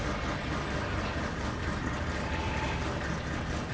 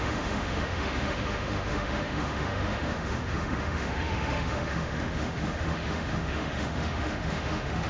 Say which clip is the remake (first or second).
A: second